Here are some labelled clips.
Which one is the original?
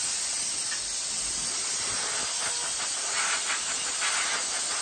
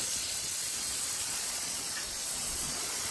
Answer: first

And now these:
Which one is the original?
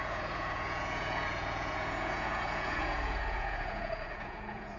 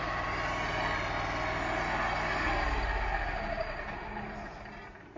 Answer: second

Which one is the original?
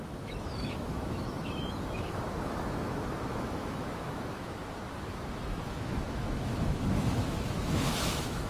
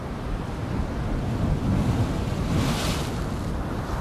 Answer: second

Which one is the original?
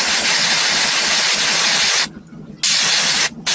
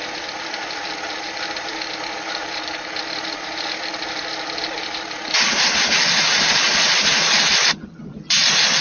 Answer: first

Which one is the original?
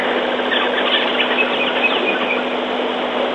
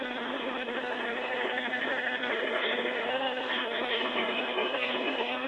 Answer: first